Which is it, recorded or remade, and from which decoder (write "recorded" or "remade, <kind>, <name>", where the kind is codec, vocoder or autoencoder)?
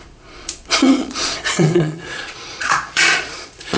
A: remade, vocoder, Vocos